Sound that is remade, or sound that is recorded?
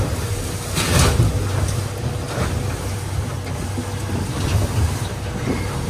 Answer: recorded